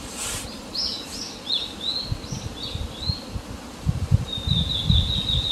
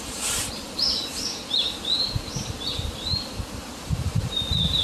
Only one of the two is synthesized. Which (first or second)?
second